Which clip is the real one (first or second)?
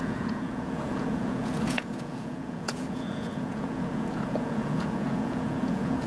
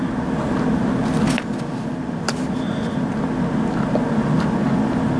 second